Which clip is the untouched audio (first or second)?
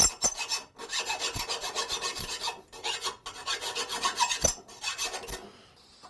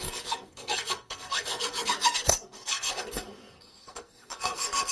first